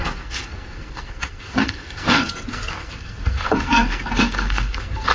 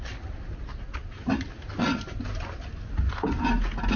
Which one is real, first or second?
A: second